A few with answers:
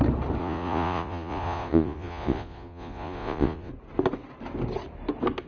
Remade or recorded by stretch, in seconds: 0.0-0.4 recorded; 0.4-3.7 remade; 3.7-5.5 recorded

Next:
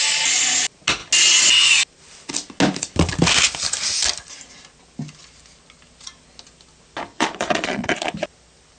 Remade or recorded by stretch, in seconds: 0.0-7.1 recorded; 7.1-8.1 remade; 8.1-8.8 recorded